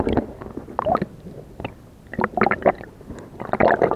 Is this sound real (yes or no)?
yes